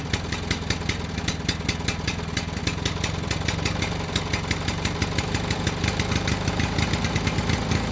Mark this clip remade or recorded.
recorded